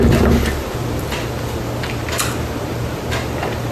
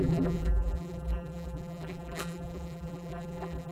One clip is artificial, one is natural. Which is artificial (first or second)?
second